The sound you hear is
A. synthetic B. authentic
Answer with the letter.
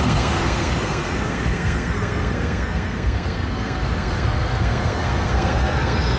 A